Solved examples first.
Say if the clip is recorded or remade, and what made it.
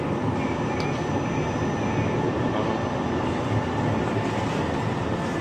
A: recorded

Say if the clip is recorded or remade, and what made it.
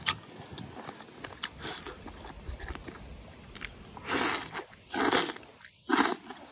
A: recorded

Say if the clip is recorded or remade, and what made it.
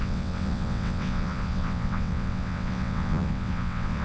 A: remade, vocoder, WaveNeXt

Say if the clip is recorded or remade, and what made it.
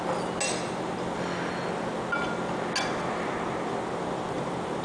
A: recorded